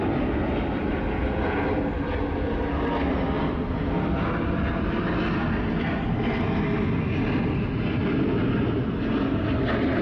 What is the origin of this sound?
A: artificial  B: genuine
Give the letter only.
B